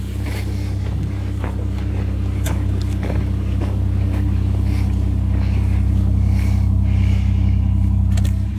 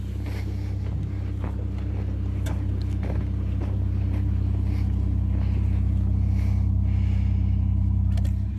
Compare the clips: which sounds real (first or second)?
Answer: second